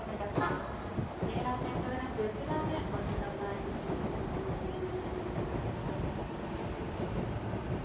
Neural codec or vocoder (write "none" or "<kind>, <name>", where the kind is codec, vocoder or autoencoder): none